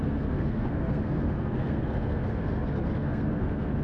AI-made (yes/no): yes